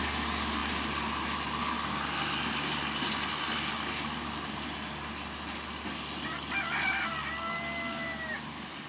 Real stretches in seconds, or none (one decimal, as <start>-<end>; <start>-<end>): 0.0-8.9